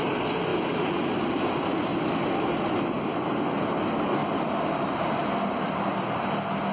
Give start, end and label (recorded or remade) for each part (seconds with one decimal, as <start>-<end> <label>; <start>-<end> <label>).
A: 0.0-6.7 recorded